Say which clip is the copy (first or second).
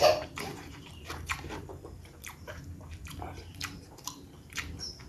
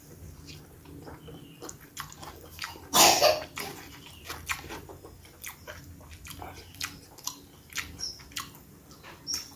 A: first